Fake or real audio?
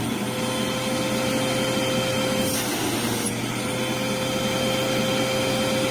real